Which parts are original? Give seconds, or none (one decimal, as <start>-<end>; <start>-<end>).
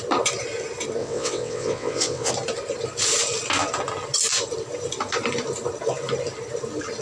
0.0-1.0; 2.3-7.0